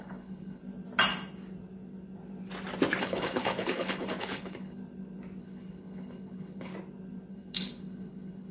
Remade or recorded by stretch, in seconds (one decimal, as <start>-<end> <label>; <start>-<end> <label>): 0.0-0.6 remade; 0.6-3.0 recorded; 3.0-4.8 remade; 4.8-5.4 recorded; 5.4-6.7 remade; 6.7-7.3 recorded; 7.3-8.5 remade